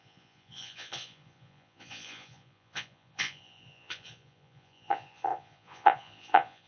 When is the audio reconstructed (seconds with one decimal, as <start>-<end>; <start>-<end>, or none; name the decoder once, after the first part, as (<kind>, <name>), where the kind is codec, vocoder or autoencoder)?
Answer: 0.0-6.7 (vocoder, Vocos)